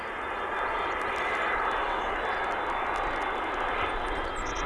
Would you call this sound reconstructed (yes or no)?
no